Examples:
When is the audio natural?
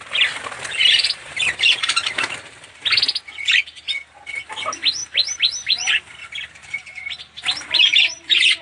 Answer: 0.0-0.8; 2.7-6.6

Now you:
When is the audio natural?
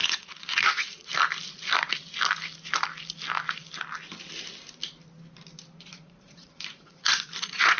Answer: 1.1-5.8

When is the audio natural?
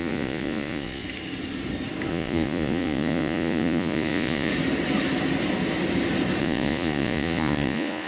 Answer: 1.0-2.1; 4.5-6.4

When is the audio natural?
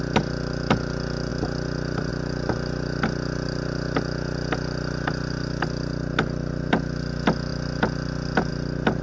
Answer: 0.0-9.0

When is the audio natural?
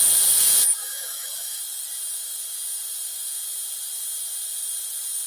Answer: 0.0-0.8; 1.6-5.3